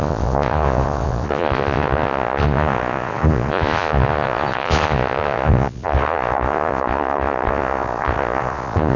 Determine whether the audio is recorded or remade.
remade